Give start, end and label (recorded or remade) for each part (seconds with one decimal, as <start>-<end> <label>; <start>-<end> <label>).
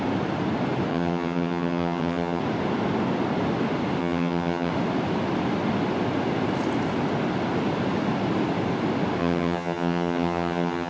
0.0-0.9 recorded; 0.9-2.4 remade; 2.4-4.0 recorded; 4.0-4.7 remade; 4.7-9.2 recorded; 9.2-10.9 remade